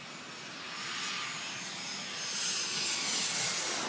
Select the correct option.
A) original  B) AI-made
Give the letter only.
A